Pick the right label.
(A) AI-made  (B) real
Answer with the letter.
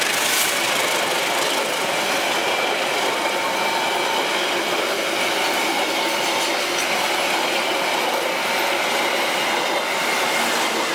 B